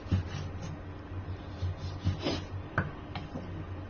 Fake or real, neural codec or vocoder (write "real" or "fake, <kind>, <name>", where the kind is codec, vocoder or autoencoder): real